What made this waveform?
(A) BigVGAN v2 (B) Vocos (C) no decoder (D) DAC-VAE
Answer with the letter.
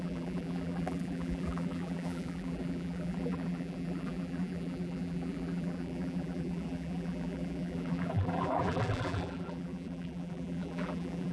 A